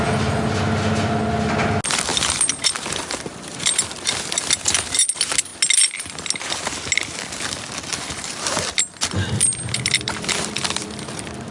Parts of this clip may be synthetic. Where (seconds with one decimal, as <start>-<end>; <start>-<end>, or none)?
2.1-4.2; 7.9-11.5